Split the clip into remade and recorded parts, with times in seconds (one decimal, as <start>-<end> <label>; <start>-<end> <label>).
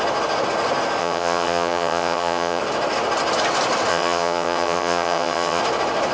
0.0-1.0 recorded; 1.0-2.6 remade; 2.6-3.9 recorded; 3.9-5.6 remade; 5.6-6.1 recorded